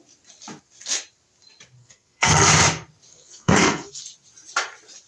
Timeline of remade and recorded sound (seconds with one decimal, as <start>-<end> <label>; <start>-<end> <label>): 0.0-1.8 recorded; 1.8-2.5 remade; 2.5-3.1 recorded; 3.1-4.0 remade; 4.0-5.1 recorded